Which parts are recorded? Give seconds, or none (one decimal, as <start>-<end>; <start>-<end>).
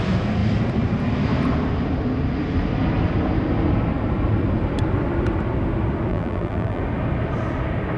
0.0-6.1; 6.8-8.0